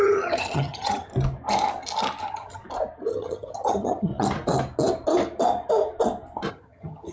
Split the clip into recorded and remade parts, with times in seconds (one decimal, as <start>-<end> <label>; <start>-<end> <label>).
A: 0.0-1.1 remade; 1.1-2.2 recorded; 2.2-2.6 remade; 2.6-3.1 recorded; 3.1-4.1 remade; 4.1-6.5 recorded; 6.5-7.1 remade